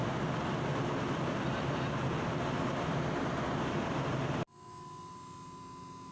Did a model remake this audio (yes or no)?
no